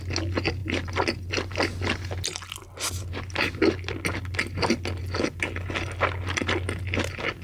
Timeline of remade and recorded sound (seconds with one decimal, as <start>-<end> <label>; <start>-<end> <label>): 0.0-7.4 recorded